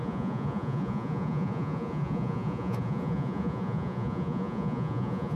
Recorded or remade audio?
remade